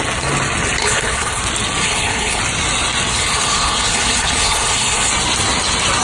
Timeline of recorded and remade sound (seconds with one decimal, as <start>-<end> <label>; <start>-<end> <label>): 0.0-0.8 recorded; 0.8-1.4 remade; 1.4-1.8 recorded; 1.8-2.4 remade; 2.4-3.1 recorded; 3.1-5.1 remade; 5.1-6.0 recorded